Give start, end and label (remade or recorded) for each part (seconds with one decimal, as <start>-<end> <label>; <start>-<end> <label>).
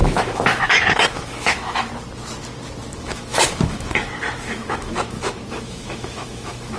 0.0-1.9 remade; 1.9-2.9 recorded; 2.9-6.8 remade